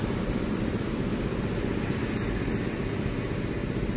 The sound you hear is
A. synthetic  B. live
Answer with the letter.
B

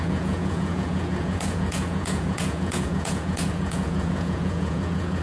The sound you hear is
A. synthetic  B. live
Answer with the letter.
A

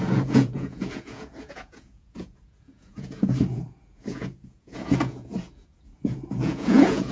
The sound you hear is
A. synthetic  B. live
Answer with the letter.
A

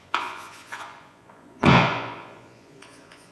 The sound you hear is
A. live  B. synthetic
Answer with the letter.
B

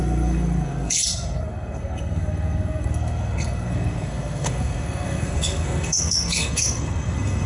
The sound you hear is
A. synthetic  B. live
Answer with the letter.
A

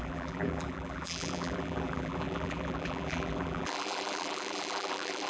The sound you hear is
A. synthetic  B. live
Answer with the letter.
A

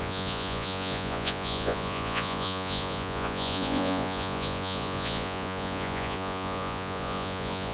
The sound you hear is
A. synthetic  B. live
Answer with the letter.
A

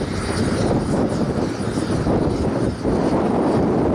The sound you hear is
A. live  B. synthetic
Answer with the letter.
A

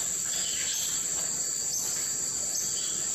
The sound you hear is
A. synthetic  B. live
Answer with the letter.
B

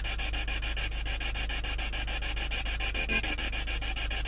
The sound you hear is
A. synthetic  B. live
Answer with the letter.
B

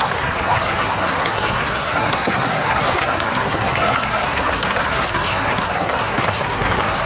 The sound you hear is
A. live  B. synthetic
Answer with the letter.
B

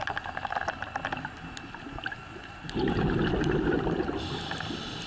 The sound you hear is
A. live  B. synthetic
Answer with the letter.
B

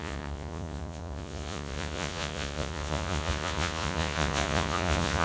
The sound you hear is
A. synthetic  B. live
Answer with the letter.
A